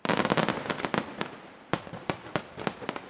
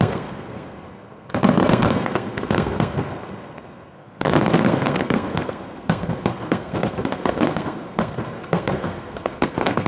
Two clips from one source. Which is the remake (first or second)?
second